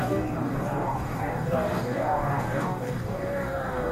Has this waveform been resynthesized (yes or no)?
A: yes